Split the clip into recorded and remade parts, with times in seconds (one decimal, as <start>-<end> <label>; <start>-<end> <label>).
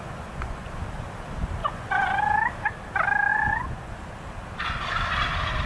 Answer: 0.0-0.7 remade; 0.7-1.6 recorded; 1.6-2.2 remade; 2.2-3.3 recorded; 3.3-3.9 remade; 3.9-5.7 recorded